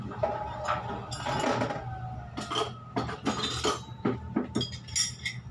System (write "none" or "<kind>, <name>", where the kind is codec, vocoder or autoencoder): none